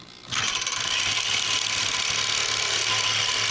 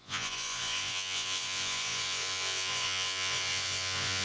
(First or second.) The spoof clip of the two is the second